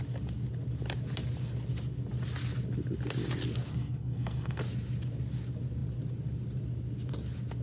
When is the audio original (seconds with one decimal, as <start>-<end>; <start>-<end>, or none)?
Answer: 0.0-3.7; 4.6-7.6